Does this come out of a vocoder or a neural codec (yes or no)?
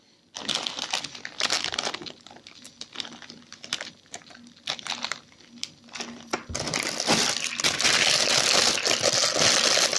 no